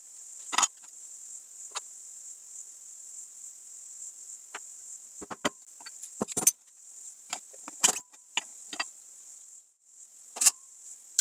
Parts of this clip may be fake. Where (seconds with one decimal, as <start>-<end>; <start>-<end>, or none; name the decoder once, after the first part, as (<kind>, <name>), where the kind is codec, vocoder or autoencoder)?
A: none